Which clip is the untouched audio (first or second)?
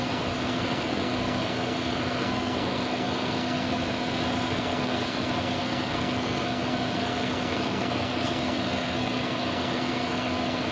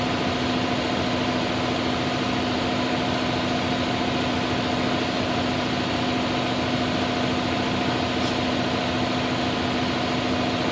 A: second